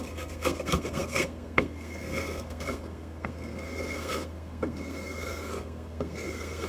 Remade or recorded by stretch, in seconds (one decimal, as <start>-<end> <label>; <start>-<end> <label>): 0.0-6.7 remade